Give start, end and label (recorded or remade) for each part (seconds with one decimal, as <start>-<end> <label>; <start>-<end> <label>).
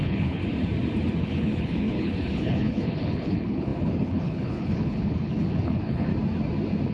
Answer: 0.0-0.4 remade; 0.4-1.2 recorded; 1.2-6.1 remade; 6.1-6.9 recorded